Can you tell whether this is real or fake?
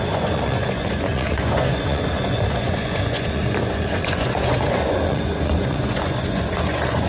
fake